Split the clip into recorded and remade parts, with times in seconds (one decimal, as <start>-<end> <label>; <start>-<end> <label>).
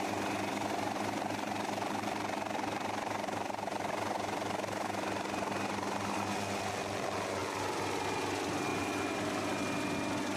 0.0-8.7 recorded; 8.7-9.4 remade; 9.4-10.4 recorded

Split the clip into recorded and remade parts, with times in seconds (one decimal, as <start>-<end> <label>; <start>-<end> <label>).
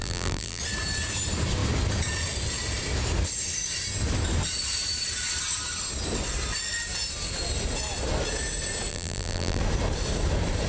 0.0-0.6 remade; 0.6-8.9 recorded; 8.9-9.6 remade; 9.6-10.7 recorded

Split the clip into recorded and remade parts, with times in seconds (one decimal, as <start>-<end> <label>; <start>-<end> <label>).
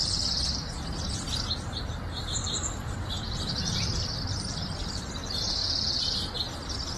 0.0-2.4 recorded; 2.4-5.1 remade; 5.1-5.6 recorded; 5.6-6.3 remade; 6.3-7.0 recorded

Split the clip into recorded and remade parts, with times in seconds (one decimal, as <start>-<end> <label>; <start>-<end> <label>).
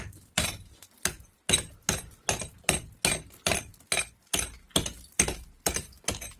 0.0-6.4 recorded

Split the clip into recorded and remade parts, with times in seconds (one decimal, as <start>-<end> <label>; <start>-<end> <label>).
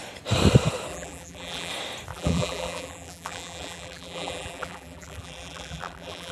0.0-0.9 recorded; 0.9-1.7 remade; 1.7-2.1 recorded; 2.1-6.3 remade